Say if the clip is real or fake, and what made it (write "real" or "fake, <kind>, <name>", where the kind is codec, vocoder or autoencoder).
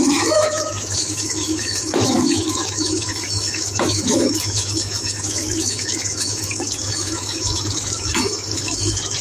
fake, autoencoder, DAC-VAE